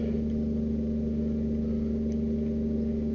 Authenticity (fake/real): real